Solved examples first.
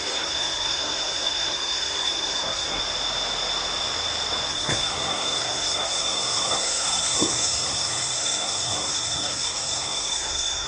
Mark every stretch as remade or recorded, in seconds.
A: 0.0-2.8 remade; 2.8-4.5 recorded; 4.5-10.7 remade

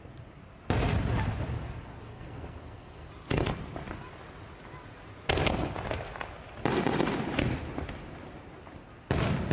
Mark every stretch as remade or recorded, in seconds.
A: 0.0-2.1 recorded; 2.1-3.1 remade; 3.1-9.5 recorded

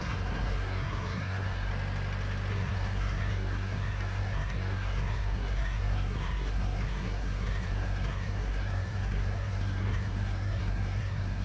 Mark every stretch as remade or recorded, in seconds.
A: 0.0-1.7 remade; 1.7-2.5 recorded; 2.5-11.4 remade

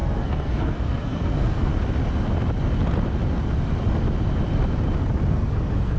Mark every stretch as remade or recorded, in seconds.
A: 0.0-1.7 remade; 1.7-5.3 recorded; 5.3-6.0 remade

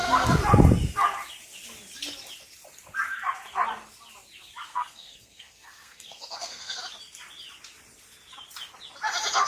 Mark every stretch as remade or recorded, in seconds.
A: 0.0-4.7 recorded; 4.7-6.8 remade; 6.8-9.5 recorded

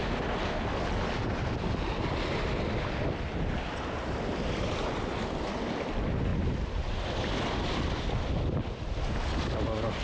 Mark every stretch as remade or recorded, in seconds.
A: 0.0-10.0 recorded

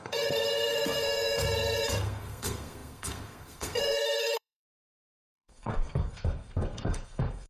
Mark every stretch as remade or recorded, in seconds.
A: 0.0-7.5 remade